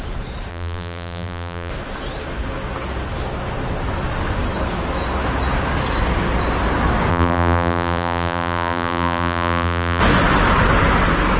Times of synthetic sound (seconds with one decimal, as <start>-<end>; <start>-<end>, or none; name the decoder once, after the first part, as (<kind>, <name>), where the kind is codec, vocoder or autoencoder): 0.5-1.7 (vocoder, BigVGAN v2); 7.1-10.0